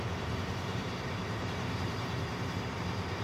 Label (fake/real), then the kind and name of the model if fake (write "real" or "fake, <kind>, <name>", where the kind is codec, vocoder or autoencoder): fake, vocoder, BigVGAN v2